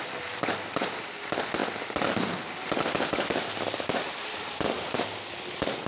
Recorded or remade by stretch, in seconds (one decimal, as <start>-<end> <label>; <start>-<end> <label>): 0.0-5.9 recorded